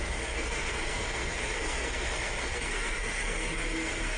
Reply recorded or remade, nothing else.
remade